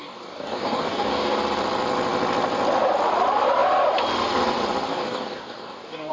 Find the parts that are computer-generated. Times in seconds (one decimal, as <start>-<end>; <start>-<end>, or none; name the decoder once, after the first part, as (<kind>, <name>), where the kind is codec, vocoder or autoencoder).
0.0-1.4 (codec, DAC); 4.9-6.1